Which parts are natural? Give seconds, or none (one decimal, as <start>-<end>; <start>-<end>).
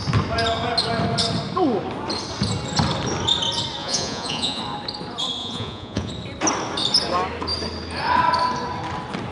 0.0-3.8; 4.6-5.4; 6.1-9.3